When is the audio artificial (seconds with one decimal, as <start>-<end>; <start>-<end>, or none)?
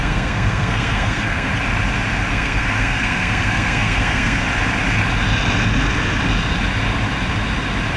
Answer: 0.0-1.5; 2.3-4.4